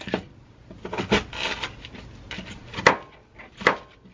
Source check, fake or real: real